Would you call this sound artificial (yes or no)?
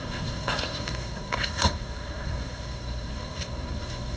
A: yes